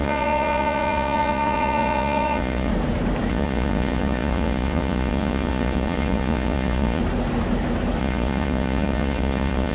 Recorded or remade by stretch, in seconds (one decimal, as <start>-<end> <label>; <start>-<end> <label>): 0.0-2.7 remade; 2.7-3.3 recorded; 3.3-7.0 remade; 7.0-8.0 recorded; 8.0-9.7 remade